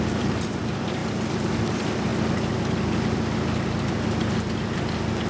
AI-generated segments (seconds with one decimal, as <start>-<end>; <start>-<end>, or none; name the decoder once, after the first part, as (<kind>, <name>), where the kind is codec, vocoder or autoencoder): 0.0-1.0 (vocoder, BigVGAN v2); 1.7-2.1